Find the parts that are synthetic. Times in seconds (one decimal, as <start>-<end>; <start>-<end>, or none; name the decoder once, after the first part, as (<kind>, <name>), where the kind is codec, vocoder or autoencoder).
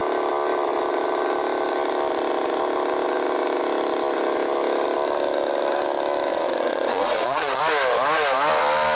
6.3-7.6 (vocoder, Vocos)